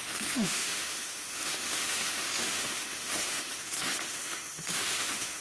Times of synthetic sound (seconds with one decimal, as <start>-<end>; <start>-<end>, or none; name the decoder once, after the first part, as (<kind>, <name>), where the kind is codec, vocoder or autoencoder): 0.0-5.4 (autoencoder, DAC-VAE)